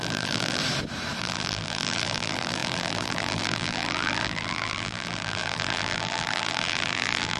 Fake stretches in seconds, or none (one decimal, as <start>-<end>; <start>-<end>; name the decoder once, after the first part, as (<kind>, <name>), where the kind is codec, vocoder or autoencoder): 0.0-0.6 (vocoder, BigVGAN v2); 1.2-7.4